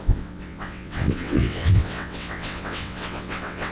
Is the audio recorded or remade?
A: remade